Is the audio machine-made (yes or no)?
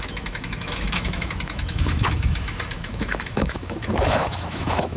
yes